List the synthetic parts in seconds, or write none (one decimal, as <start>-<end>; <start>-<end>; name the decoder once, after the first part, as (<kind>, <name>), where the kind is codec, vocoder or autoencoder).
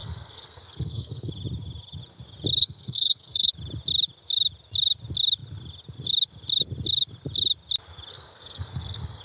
0.0-1.3 (codec, SNAC); 2.6-3.5; 8.1-9.2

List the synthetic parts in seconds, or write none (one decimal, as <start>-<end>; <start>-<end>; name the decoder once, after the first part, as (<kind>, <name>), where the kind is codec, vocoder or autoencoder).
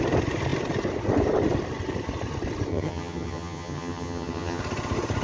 2.7-4.6 (vocoder, HiFi-GAN)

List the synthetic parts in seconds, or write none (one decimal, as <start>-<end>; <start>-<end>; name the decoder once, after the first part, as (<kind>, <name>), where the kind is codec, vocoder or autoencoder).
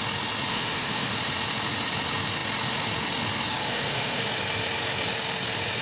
0.5-1.1 (autoencoder, DAC-VAE); 3.6-4.2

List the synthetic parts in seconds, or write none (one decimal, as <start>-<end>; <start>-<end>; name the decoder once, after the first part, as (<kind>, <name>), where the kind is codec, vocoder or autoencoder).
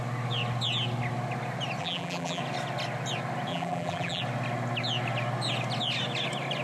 1.8-2.4 (vocoder, BigVGAN v2); 3.5-4.2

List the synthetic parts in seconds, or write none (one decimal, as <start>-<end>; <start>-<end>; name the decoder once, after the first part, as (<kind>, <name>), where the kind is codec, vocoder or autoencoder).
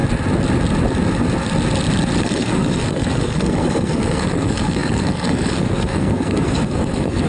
2.2-7.3 (codec, SNAC)